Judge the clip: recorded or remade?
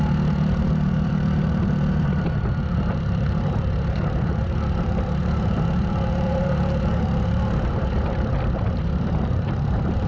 remade